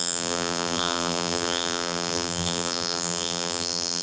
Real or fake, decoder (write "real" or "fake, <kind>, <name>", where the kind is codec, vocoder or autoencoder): fake, vocoder, BigVGAN v2